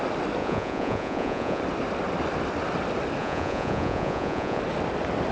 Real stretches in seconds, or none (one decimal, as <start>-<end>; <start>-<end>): 0.0-0.4; 1.6-3.2; 4.6-5.3

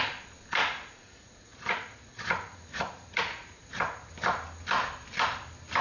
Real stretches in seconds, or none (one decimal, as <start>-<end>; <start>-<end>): 0.0-0.6; 4.1-5.8